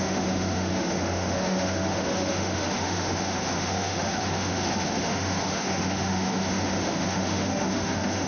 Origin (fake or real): fake